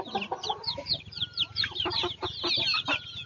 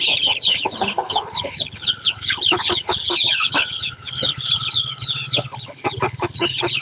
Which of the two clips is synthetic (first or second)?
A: second